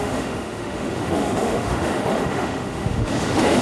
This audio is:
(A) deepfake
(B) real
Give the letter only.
A